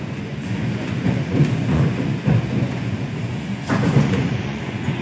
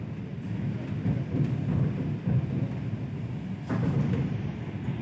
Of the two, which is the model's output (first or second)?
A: first